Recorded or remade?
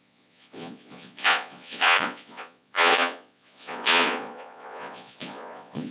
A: remade